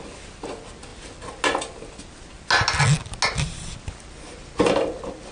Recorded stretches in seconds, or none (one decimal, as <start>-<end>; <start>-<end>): 0.0-5.3